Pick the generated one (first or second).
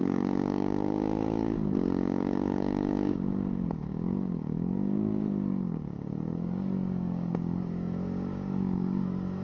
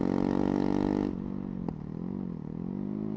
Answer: first